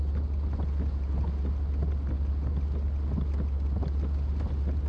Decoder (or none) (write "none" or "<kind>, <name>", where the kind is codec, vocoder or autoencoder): none